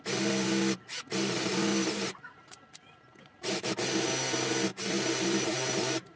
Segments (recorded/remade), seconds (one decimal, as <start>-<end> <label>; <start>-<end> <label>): 0.0-1.7 recorded; 1.7-2.7 remade; 2.7-4.7 recorded; 4.7-6.2 remade